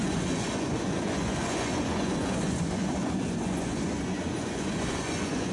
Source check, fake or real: fake